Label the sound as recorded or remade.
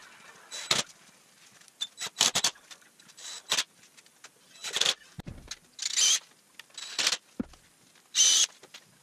recorded